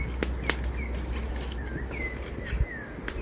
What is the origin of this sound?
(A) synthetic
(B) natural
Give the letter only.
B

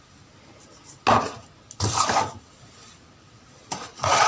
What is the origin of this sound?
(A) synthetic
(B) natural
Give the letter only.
B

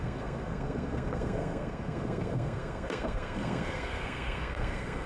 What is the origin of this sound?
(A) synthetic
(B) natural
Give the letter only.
A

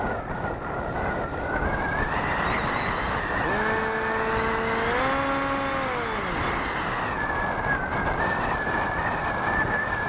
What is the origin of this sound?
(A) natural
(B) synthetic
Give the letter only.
A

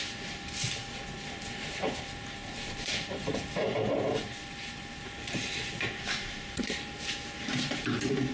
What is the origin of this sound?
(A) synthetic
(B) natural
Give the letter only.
A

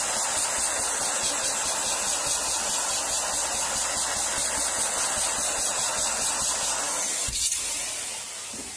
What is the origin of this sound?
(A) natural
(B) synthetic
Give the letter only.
A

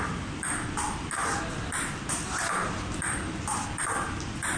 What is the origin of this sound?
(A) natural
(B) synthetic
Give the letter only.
A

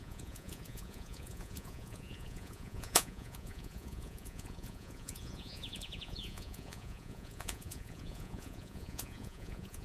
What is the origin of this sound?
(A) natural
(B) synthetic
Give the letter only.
B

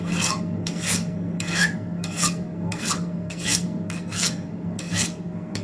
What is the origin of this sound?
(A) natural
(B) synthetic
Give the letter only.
B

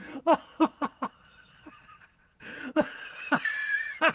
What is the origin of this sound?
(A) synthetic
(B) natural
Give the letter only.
A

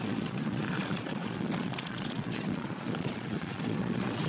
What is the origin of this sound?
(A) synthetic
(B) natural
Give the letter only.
A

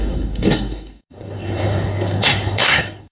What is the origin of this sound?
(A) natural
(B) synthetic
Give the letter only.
B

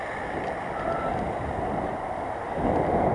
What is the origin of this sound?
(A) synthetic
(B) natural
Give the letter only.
B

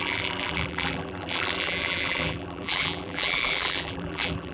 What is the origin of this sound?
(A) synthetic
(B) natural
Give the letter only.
A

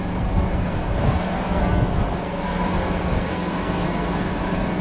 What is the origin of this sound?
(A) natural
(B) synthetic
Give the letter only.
B